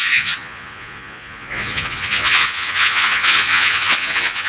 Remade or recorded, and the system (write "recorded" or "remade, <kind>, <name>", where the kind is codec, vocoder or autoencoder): remade, vocoder, Vocos